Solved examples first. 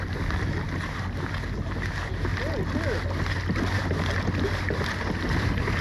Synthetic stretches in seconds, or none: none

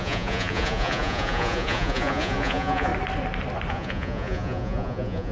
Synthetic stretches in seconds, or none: 0.0-2.9; 3.7-5.3

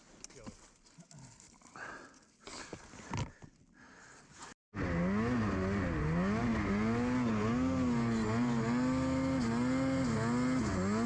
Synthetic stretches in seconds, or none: none

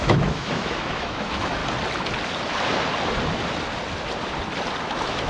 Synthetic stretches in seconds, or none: 0.0-1.6; 4.8-5.3

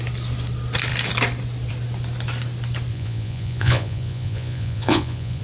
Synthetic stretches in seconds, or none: 2.9-5.4